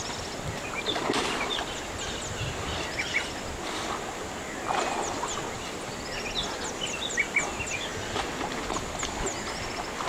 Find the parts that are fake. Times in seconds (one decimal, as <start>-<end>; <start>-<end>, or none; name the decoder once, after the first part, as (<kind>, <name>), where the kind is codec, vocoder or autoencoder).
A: none